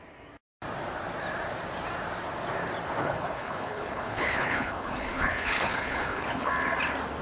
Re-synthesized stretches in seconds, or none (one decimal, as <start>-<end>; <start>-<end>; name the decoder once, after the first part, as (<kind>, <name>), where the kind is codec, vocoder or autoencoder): 3.0-6.5 (codec, HILCodec)